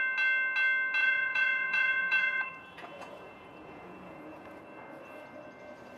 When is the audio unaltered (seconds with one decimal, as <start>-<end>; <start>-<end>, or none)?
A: 0.0-1.0; 4.6-6.0